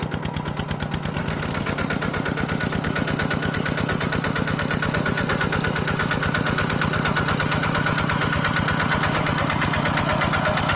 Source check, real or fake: real